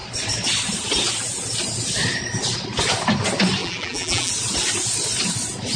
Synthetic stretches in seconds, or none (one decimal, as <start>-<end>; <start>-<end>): 3.6-4.3